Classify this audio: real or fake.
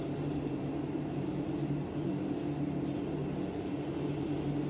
real